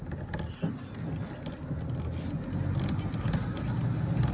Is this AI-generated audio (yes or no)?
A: no